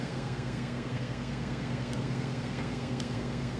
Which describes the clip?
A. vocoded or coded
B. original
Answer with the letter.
A